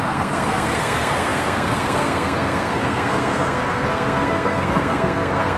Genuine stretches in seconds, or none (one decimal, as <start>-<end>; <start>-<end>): none